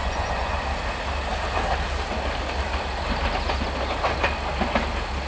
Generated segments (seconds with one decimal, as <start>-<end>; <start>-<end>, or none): 0.0-0.6